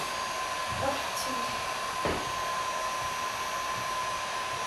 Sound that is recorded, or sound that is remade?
remade